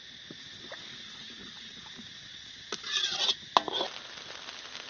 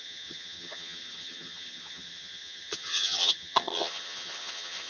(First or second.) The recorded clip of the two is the first